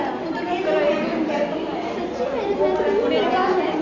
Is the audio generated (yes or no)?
no